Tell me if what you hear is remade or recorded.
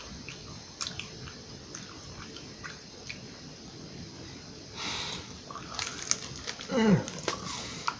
recorded